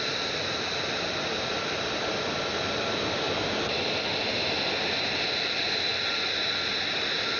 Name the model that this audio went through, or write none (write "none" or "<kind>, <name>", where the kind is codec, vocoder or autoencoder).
none